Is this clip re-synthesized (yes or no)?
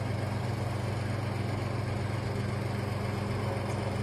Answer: no